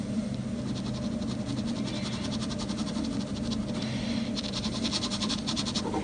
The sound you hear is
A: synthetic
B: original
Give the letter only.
B